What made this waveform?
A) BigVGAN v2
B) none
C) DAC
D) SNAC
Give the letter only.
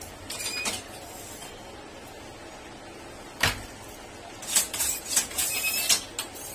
B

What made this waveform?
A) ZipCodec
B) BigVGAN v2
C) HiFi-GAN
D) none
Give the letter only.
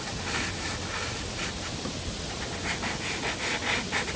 D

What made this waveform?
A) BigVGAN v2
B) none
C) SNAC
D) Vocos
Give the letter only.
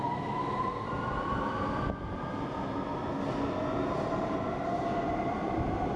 B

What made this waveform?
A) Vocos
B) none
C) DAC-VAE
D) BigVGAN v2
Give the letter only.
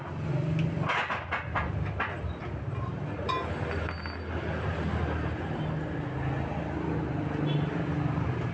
B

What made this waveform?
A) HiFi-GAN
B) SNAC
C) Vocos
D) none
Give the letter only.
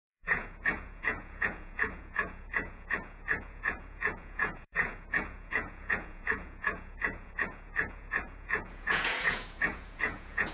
C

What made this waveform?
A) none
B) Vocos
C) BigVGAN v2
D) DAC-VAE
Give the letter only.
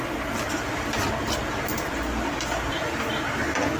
A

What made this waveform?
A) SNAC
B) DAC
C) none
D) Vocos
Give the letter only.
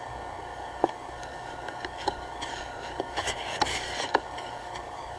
B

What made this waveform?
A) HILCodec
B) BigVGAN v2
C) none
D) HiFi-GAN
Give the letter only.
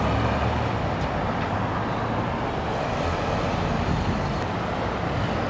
C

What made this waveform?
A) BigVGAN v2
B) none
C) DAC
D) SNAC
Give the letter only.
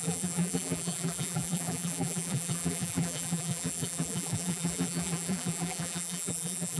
A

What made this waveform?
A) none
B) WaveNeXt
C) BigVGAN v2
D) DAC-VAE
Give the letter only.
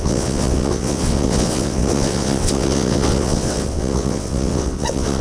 B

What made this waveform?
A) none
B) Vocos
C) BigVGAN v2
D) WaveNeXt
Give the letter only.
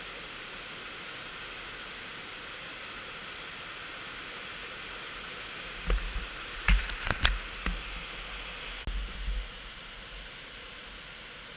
A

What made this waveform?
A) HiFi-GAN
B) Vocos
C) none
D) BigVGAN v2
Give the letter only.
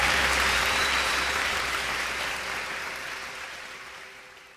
D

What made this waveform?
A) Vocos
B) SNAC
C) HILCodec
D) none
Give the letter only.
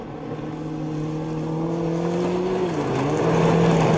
D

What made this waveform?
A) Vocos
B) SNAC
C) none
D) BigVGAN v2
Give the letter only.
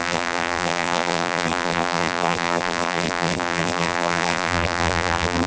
D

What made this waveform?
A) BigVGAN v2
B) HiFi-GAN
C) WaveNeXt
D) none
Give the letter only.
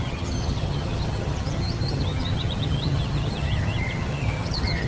B